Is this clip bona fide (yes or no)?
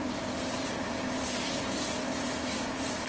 no